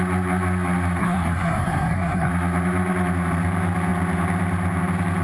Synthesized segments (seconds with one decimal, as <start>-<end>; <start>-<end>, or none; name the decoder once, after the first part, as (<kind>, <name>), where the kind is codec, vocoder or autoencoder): 1.0-2.3 (codec, SNAC)